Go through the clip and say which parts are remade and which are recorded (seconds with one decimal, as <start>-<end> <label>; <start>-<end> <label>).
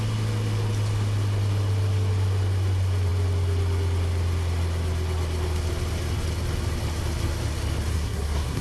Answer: 0.0-7.9 recorded; 7.9-8.6 remade